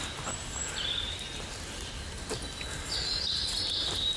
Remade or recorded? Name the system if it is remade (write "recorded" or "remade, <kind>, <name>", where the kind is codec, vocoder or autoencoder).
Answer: recorded